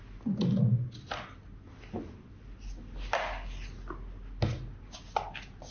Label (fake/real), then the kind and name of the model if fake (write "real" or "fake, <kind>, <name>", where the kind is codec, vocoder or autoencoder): real